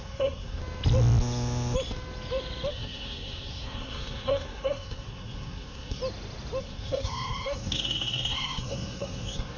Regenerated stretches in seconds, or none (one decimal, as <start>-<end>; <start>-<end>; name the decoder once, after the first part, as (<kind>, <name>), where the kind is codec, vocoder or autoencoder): 0.0-0.6 (codec, SNAC); 2.7-6.0; 6.6-9.6